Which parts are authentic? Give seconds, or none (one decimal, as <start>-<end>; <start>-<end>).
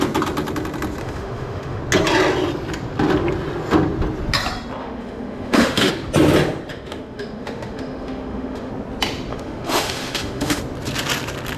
0.0-1.0; 1.8-4.8; 5.9-6.7; 8.7-9.3; 10.6-11.6